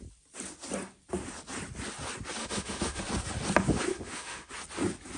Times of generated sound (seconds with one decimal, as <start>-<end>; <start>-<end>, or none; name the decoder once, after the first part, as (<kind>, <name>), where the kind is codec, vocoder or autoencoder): 2.4-3.0 (autoencoder, DAC-VAE); 3.9-4.5